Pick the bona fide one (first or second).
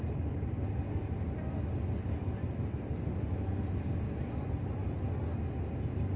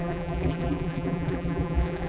first